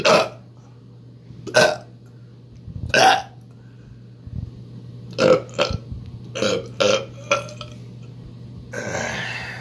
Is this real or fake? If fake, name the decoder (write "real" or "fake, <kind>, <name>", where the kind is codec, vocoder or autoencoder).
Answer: real